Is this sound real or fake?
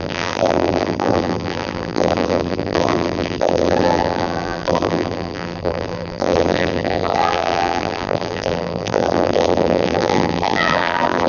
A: fake